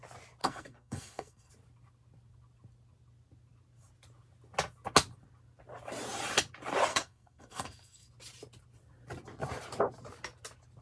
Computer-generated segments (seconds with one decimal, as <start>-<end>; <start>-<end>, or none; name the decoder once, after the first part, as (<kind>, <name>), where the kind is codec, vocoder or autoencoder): 0.4-1.5 (codec, SNAC); 6.9-8.1